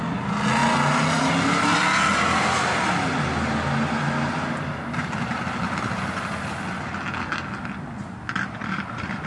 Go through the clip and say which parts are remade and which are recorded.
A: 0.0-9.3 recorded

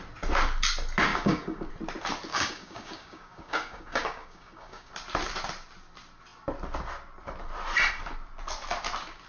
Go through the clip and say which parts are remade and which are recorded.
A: 0.0-1.1 recorded; 1.1-1.7 remade; 1.7-2.3 recorded; 2.3-4.9 remade; 4.9-9.3 recorded

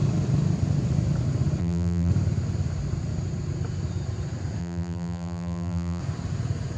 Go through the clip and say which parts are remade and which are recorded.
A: 0.0-1.6 recorded; 1.6-2.1 remade; 2.1-4.6 recorded; 4.6-6.0 remade; 6.0-6.8 recorded

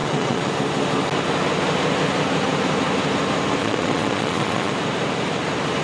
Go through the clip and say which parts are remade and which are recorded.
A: 0.0-0.5 remade; 0.5-3.6 recorded; 3.6-4.7 remade; 4.7-5.8 recorded